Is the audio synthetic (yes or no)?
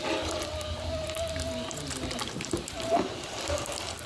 no